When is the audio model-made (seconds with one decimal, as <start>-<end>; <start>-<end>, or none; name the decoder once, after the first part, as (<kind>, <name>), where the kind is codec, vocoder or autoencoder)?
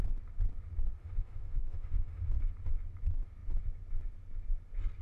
1.0-2.3 (autoencoder, DAC-VAE)